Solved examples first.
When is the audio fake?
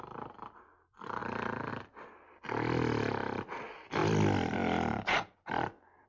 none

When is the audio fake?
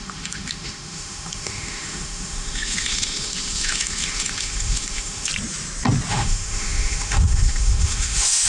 0.0-5.3 (autoencoder, DAC-VAE); 6.1-8.5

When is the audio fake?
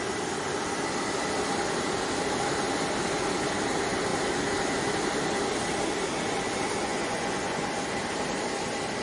6.8-7.7 (vocoder, Vocos)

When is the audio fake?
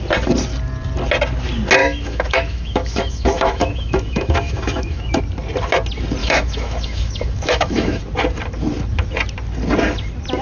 1.8-5.2 (autoencoder, DAC-VAE); 6.2-8.0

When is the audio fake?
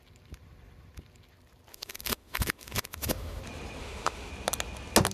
1.7-3.4 (autoencoder, DAC-VAE); 3.8-4.3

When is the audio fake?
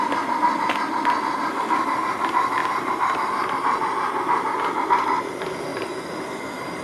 none